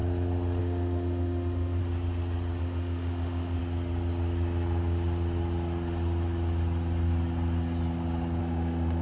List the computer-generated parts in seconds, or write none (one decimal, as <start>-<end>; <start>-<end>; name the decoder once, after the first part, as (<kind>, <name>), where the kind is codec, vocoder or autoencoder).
0.6-1.8 (autoencoder, DAC-VAE); 2.6-3.6; 8.4-9.0